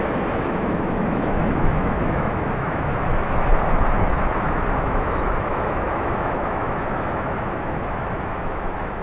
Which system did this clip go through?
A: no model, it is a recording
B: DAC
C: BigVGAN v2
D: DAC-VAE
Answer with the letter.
D